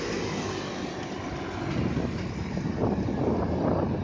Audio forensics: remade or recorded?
recorded